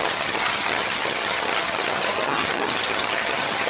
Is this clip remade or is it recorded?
remade